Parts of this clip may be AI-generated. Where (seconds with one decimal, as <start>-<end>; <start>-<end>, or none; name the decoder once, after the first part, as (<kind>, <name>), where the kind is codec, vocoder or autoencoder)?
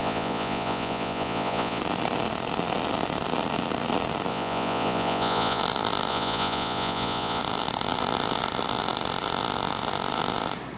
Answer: 0.0-1.8 (vocoder, Vocos); 4.3-5.6; 6.1-7.4